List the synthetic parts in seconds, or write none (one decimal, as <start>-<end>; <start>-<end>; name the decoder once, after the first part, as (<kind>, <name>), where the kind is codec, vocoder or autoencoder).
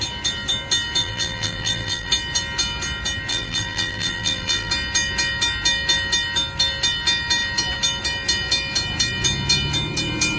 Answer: 1.0-2.1 (vocoder, BigVGAN v2); 3.3-4.7